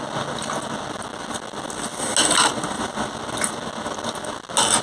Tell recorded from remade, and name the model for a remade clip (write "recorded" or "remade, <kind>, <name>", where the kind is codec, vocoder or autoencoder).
recorded